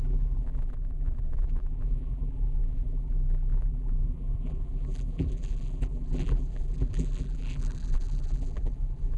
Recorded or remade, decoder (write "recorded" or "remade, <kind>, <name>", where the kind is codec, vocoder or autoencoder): remade, vocoder, BigVGAN v2